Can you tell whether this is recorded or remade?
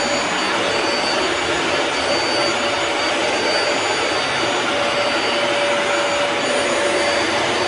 recorded